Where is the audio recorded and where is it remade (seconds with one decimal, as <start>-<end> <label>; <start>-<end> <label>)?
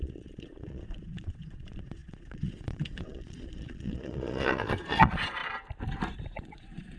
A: 0.0-5.4 remade; 5.4-6.4 recorded; 6.4-7.0 remade